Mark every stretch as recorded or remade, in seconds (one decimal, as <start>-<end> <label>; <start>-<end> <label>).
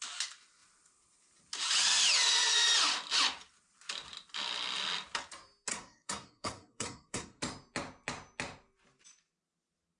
0.0-5.7 recorded; 5.7-7.4 remade; 7.4-10.0 recorded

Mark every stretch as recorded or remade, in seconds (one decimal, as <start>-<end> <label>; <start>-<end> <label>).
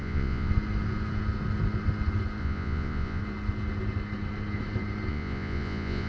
0.0-0.5 remade; 0.5-2.4 recorded; 2.4-3.2 remade; 3.2-5.1 recorded; 5.1-6.1 remade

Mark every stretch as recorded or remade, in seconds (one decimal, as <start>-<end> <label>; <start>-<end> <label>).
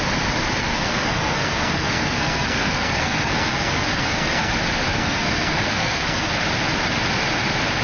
0.0-0.6 recorded; 0.6-4.5 remade; 4.5-4.9 recorded; 4.9-6.3 remade; 6.3-7.8 recorded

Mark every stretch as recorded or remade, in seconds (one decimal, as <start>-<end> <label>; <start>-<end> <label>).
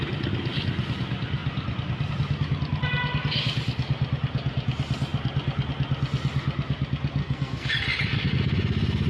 0.0-7.2 recorded; 7.2-7.7 remade; 7.7-9.1 recorded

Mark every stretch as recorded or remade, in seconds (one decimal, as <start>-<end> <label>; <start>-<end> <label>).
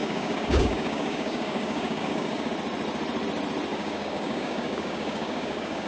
0.0-2.5 remade; 2.5-3.7 recorded; 3.7-5.9 remade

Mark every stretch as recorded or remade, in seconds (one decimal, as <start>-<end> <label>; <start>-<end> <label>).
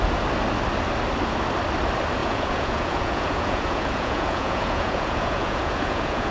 0.0-2.2 recorded; 2.2-6.3 remade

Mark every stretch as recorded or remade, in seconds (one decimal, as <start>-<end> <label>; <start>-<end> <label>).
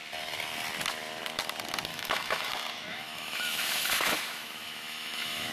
0.0-1.9 recorded; 1.9-2.5 remade; 2.5-2.9 recorded; 2.9-5.5 remade